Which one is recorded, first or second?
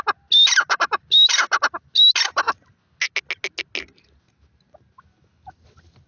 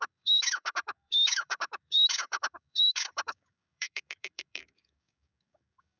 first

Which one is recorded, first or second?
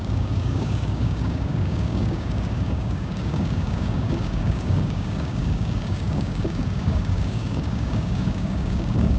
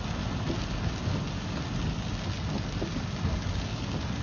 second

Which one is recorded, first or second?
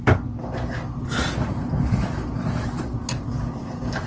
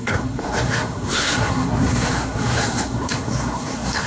first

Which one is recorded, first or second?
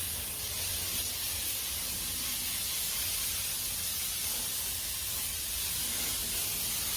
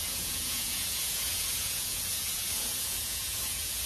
first